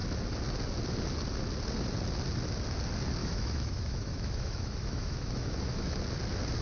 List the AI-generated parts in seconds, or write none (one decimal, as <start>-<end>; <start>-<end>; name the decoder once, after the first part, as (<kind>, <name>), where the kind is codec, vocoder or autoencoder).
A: 3.2-6.0 (autoencoder, DAC-VAE)